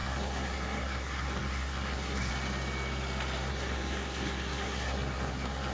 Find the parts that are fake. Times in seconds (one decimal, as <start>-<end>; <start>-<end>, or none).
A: 0.0-2.3; 3.5-5.7